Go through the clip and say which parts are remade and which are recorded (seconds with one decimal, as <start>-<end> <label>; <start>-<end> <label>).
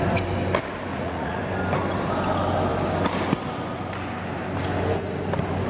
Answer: 0.0-0.9 recorded; 0.9-1.4 remade; 1.4-5.7 recorded